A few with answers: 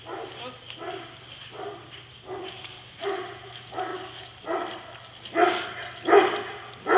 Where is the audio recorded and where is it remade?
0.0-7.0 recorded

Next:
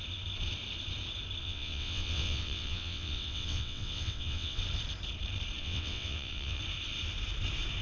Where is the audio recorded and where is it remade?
0.0-1.4 recorded; 1.4-4.6 remade; 4.6-5.6 recorded; 5.6-6.6 remade; 6.6-7.8 recorded

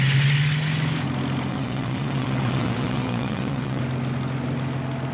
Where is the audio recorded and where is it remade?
0.0-1.5 recorded; 1.5-3.8 remade; 3.8-5.1 recorded

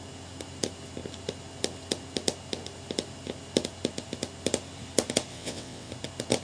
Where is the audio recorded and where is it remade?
0.0-5.3 recorded; 5.3-5.9 remade; 5.9-6.4 recorded

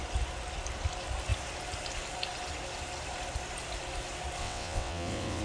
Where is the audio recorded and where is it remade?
0.0-4.4 recorded; 4.4-5.4 remade